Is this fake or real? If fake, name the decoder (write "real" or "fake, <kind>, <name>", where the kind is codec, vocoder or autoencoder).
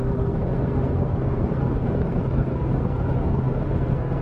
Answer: fake, codec, SNAC